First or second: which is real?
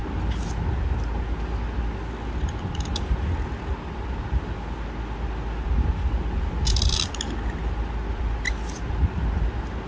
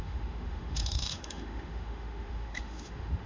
first